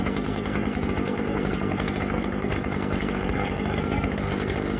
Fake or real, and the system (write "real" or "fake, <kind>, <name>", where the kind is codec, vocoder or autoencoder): fake, codec, SNAC